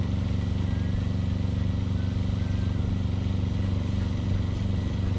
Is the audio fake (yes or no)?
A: no